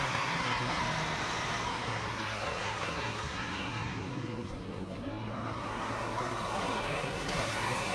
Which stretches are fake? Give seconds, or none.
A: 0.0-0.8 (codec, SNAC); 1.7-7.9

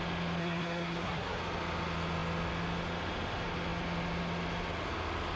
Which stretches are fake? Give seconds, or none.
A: 0.4-1.4 (codec, SNAC)

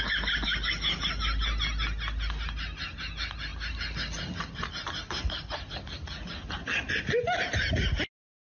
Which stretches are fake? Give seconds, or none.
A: none

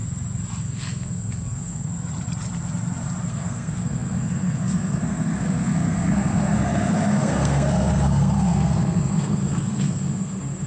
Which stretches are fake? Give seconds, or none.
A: 0.6-1.9 (codec, SNAC); 3.3-10.7

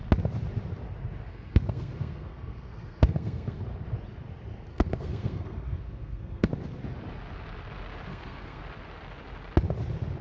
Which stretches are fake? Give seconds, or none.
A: 1.3-3.6 (codec, SNAC); 4.7-6.5; 8.1-8.6

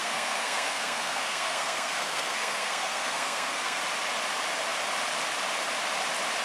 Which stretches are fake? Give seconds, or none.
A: 0.0-3.8 (codec, SNAC)

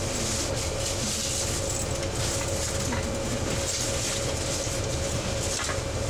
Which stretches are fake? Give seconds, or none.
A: none

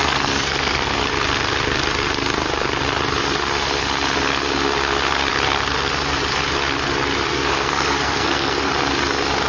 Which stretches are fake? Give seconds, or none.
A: 0.0-1.0 (codec, SNAC); 7.3-8.7